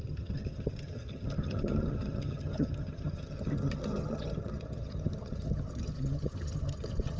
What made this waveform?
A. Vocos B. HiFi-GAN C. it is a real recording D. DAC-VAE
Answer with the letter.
B